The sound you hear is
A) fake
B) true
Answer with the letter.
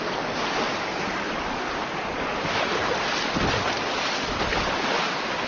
B